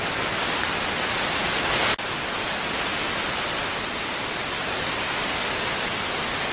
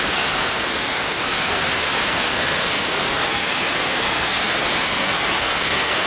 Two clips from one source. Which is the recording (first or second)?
first